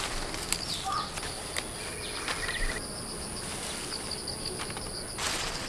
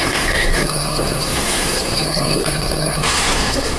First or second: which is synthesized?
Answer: second